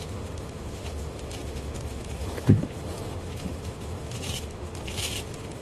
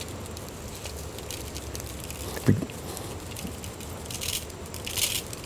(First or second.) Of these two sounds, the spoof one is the first